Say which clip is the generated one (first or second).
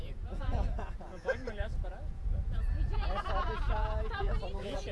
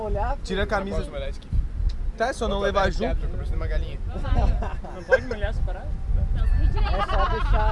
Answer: first